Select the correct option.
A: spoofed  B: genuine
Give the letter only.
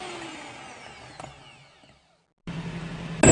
B